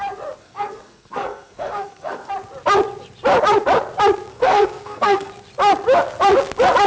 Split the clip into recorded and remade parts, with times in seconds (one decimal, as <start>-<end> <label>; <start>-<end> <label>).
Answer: 0.0-0.4 recorded; 0.4-2.3 remade; 2.3-4.3 recorded; 4.3-5.3 remade; 5.3-6.9 recorded